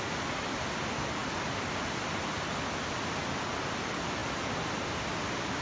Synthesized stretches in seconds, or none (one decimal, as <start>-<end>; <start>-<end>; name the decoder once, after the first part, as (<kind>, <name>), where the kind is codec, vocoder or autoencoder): none